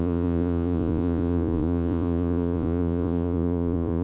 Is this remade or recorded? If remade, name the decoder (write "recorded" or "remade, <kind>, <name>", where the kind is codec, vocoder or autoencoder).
remade, vocoder, Vocos